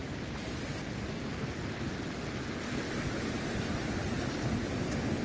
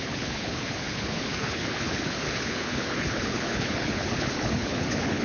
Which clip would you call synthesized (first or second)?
second